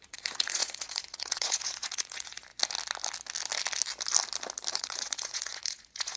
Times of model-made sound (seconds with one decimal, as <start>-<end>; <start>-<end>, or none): 0.0-2.5; 4.7-6.2